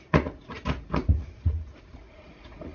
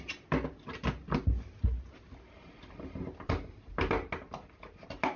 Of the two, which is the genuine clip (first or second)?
second